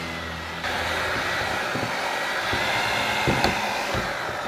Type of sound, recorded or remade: recorded